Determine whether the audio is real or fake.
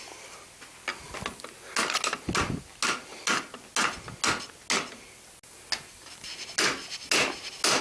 real